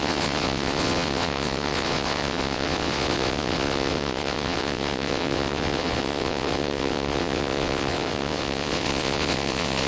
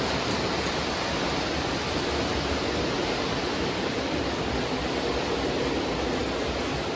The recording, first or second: second